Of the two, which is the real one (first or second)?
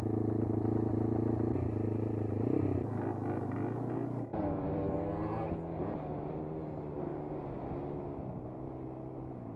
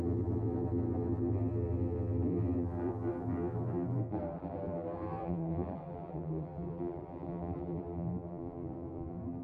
first